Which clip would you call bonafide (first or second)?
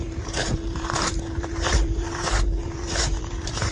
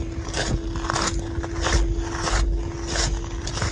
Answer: second